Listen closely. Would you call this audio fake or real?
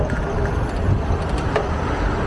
real